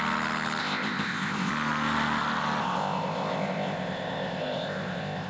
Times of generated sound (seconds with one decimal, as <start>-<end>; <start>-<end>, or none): 0.6-1.5; 2.6-5.3